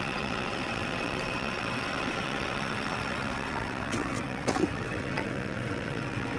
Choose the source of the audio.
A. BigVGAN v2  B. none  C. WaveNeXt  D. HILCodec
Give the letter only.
C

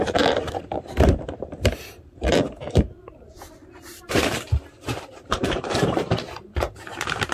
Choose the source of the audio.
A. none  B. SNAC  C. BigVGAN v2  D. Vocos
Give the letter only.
C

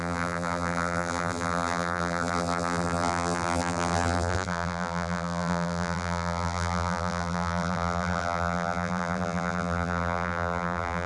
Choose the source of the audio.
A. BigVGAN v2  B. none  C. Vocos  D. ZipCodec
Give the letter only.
A